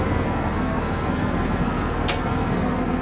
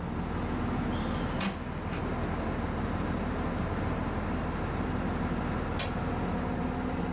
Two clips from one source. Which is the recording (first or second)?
second